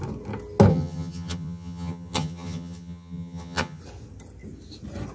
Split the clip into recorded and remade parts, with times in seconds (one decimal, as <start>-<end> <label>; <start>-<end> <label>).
0.0-0.7 recorded; 0.7-3.8 remade; 3.8-5.1 recorded